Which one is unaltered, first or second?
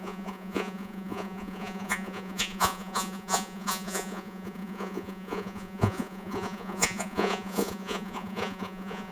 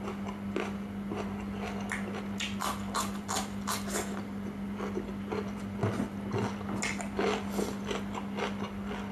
second